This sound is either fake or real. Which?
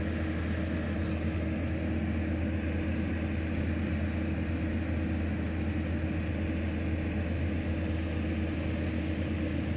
real